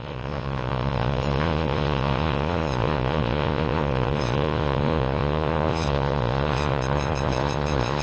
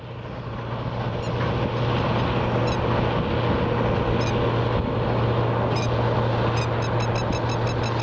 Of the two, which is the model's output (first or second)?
first